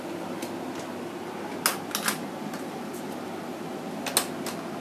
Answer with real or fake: real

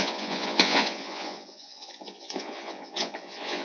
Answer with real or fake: fake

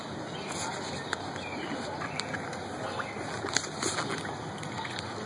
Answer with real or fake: real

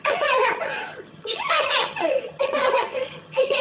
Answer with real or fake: fake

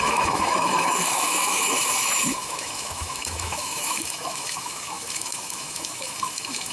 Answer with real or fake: fake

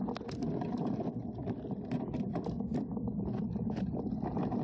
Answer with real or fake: real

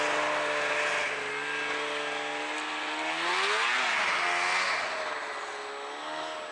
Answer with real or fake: real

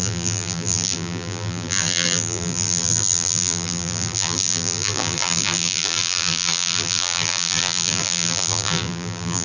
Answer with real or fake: fake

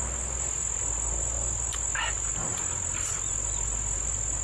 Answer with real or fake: real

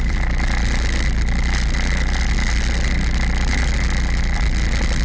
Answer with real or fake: real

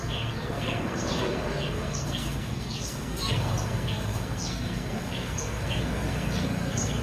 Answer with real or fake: fake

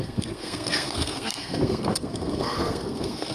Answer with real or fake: fake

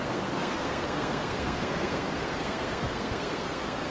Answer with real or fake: fake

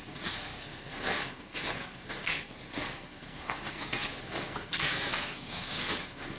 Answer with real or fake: fake